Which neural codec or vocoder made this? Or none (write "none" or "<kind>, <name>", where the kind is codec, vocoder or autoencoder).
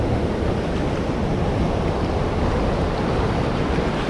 none